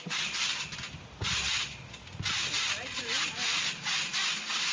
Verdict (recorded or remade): recorded